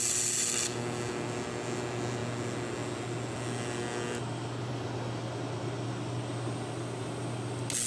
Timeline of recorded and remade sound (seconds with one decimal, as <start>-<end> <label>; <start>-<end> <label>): 0.0-7.9 recorded

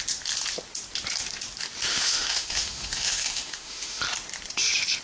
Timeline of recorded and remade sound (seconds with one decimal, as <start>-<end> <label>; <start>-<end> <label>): 0.0-1.9 recorded; 1.9-4.0 remade; 4.0-5.0 recorded

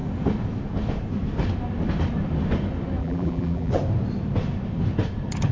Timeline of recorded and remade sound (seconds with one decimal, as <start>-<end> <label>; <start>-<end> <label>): 0.0-3.0 recorded; 3.0-3.7 remade; 3.7-5.5 recorded

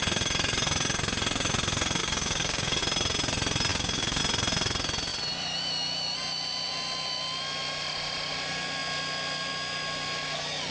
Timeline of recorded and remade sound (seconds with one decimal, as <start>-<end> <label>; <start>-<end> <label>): 0.0-2.0 recorded; 2.0-2.8 remade; 2.8-3.7 recorded; 3.7-4.2 remade; 4.2-10.7 recorded

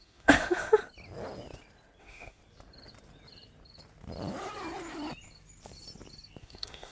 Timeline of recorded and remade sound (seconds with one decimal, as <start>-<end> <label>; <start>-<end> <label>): 0.0-0.8 remade; 0.8-2.0 recorded; 2.0-2.4 remade; 2.4-6.4 recorded; 6.4-6.9 remade

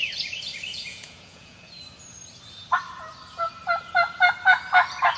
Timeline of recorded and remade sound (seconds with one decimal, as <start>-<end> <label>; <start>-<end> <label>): 0.0-0.7 recorded; 0.7-1.7 remade; 1.7-5.2 recorded

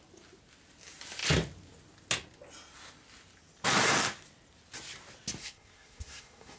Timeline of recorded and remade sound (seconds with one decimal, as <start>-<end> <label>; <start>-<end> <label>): 0.0-5.4 recorded; 5.4-6.6 remade

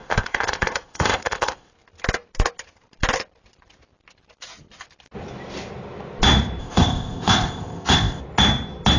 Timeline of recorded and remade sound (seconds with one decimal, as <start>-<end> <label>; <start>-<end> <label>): 0.0-1.7 remade; 1.7-6.6 recorded; 6.6-8.2 remade; 8.2-9.0 recorded